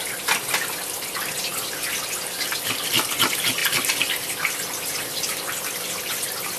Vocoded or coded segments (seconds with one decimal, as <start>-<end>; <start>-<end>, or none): none